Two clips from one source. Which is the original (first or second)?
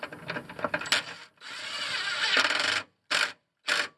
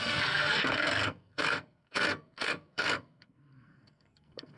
first